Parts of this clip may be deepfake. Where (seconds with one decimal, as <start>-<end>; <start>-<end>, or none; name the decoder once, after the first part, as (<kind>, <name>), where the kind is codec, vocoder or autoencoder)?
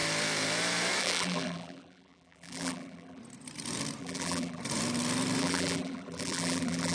1.0-3.2 (vocoder, BigVGAN v2); 4.0-4.6; 5.4-6.9